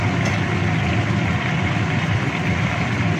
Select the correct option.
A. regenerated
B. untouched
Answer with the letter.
B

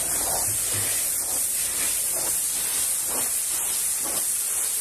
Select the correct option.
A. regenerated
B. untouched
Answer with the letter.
A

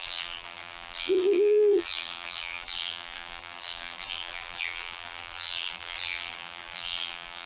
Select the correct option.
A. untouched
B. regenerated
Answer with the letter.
B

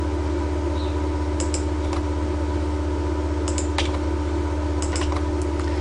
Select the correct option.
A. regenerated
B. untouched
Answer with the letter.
B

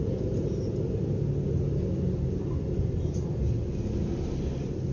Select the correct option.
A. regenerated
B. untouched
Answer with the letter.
B